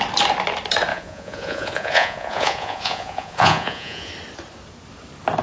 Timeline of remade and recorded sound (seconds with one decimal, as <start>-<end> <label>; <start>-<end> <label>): 0.0-0.9 recorded; 0.9-4.1 remade; 4.1-5.4 recorded